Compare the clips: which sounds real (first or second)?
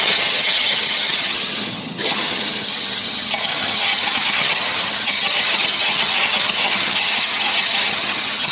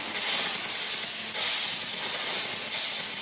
second